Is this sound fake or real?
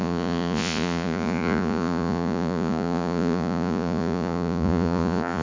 fake